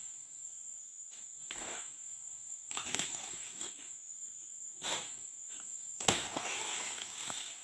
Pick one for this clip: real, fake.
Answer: fake